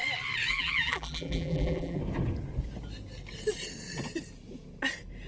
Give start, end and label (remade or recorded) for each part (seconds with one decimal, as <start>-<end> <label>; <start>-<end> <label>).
0.0-0.5 recorded; 0.5-2.0 remade; 2.0-5.3 recorded